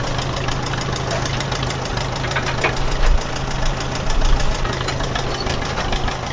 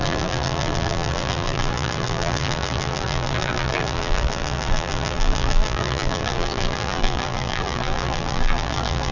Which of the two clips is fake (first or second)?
second